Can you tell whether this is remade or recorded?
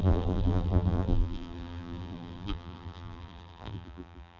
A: remade